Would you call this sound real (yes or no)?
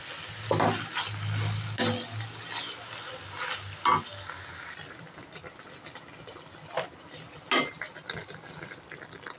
yes